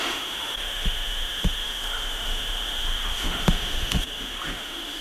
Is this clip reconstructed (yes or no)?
yes